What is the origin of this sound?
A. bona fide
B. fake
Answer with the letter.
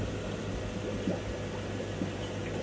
A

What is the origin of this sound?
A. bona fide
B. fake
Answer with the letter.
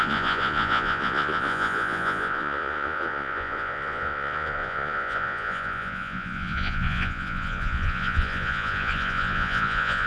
B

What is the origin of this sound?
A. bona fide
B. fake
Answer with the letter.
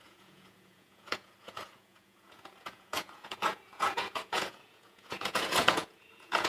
B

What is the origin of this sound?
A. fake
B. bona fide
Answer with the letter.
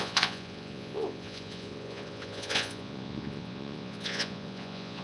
A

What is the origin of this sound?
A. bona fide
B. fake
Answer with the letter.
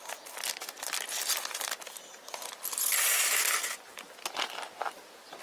A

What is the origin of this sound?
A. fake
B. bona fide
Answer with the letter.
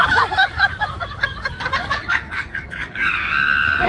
A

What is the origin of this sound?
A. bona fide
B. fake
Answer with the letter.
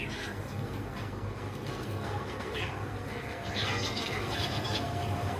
B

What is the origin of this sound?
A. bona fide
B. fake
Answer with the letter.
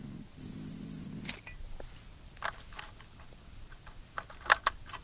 A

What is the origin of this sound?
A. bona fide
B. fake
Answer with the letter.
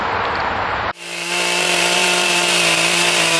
B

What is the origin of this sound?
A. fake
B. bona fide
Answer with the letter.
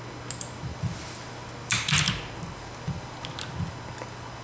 B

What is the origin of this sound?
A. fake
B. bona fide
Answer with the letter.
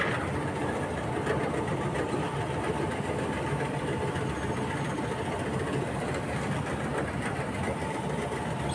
B